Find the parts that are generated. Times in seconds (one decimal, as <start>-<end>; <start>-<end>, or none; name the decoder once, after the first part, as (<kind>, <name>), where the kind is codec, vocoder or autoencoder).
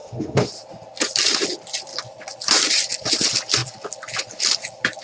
0.0-0.5 (autoencoder, DAC-VAE)